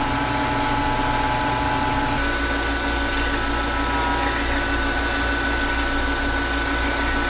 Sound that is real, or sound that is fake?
real